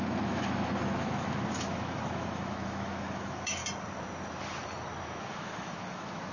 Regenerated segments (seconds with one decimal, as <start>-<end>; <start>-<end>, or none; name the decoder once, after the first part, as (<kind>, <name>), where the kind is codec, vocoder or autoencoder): 0.0-3.6 (autoencoder, DAC-VAE); 5.2-6.3